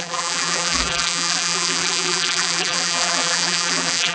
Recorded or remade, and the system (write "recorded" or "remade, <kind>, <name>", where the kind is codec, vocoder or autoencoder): remade, vocoder, BigVGAN v2